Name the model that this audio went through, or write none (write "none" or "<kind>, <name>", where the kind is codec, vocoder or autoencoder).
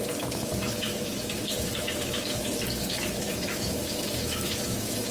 autoencoder, DAC-VAE